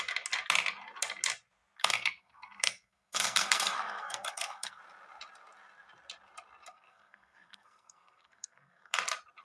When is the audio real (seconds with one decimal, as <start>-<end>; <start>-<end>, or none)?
0.0-1.8; 4.8-6.7; 9.0-9.4